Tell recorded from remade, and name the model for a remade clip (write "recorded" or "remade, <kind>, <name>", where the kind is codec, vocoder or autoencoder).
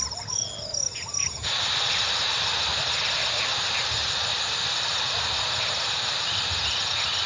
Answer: recorded